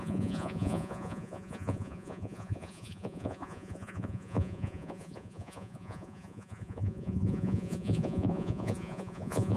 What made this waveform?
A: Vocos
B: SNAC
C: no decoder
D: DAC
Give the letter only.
A